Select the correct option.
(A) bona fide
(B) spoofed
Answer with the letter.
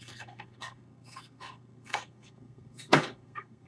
B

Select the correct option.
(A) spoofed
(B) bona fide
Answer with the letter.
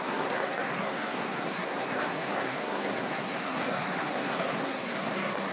A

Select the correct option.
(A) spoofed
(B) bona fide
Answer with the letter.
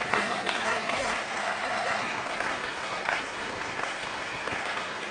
A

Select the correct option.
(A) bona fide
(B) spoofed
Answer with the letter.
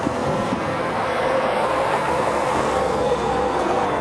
B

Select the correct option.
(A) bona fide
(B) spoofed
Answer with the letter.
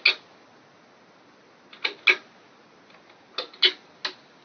A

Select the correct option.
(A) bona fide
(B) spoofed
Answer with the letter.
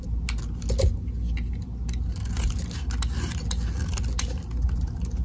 A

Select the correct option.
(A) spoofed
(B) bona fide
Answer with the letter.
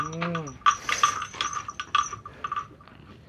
B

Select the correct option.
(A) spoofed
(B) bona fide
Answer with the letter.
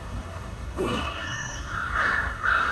A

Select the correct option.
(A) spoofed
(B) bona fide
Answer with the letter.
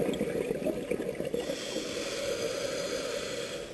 B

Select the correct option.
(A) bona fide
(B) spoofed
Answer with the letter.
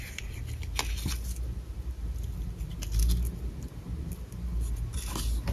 A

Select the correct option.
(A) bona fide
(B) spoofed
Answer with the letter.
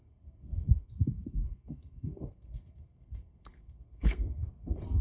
B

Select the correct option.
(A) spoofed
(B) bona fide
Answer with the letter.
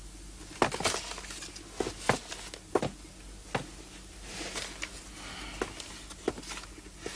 B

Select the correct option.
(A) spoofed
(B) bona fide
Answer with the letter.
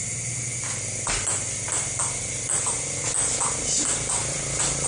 B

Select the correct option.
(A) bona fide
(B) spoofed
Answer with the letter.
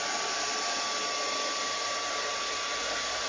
A